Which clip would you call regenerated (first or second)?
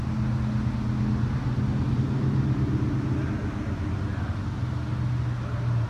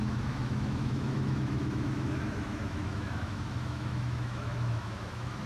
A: second